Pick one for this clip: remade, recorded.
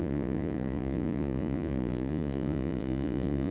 remade